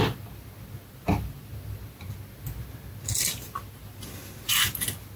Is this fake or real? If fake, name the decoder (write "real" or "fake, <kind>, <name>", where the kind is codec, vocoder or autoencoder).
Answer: real